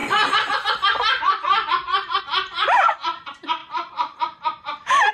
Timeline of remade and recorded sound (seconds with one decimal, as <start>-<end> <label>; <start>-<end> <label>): 0.0-5.1 remade